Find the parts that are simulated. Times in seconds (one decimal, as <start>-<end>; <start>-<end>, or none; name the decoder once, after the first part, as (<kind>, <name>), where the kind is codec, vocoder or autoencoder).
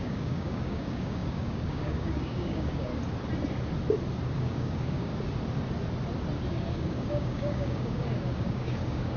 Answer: 0.0-2.9 (codec, DAC); 4.3-5.1; 6.5-9.2